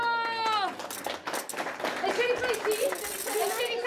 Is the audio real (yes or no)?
yes